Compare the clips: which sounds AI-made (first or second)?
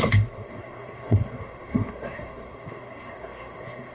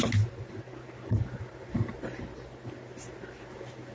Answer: first